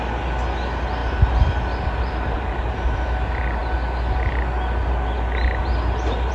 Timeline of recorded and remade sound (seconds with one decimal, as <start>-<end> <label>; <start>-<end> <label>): 0.0-6.3 recorded